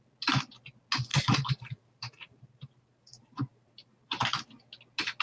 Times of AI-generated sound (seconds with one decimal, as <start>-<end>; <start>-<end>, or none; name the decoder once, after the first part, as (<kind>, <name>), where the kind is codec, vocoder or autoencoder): 1.1-4.2 (vocoder, BigVGAN v2)